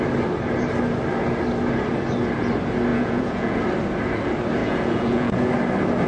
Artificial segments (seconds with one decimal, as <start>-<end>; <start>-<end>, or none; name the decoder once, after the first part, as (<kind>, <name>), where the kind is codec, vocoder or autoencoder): 2.9-3.6 (vocoder, Vocos); 4.6-5.5